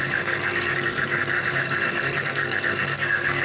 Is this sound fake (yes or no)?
yes